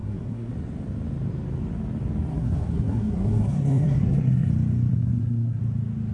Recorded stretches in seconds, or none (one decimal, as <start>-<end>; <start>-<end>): 0.5-2.3; 4.5-4.9; 5.6-6.1